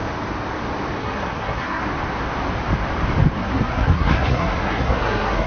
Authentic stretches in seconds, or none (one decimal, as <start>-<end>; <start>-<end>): 0.0-1.0; 1.8-3.4